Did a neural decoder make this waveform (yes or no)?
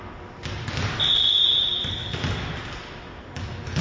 no